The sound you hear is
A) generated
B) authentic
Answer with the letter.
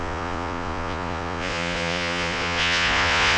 A